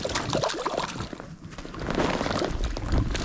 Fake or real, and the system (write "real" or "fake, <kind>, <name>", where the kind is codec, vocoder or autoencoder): real